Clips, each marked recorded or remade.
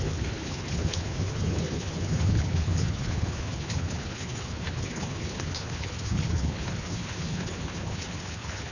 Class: remade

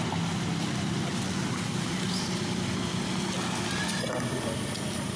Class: recorded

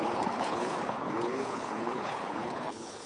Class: remade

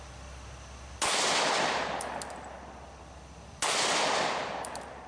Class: recorded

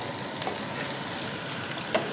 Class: recorded